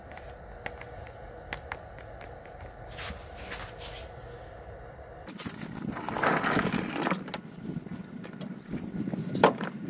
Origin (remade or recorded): recorded